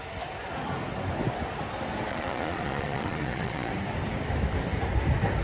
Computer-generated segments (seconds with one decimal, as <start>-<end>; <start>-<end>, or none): 2.1-3.7